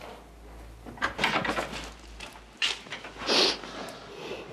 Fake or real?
real